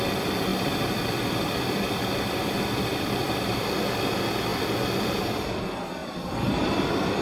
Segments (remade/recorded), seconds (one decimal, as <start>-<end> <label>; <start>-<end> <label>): 0.0-0.5 recorded; 0.5-4.1 remade; 4.1-6.0 recorded; 6.0-7.2 remade